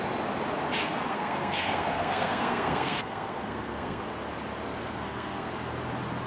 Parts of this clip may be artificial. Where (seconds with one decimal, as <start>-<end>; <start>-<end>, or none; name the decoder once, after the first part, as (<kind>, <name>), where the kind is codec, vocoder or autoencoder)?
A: 1.1-4.0 (codec, SNAC); 4.7-5.5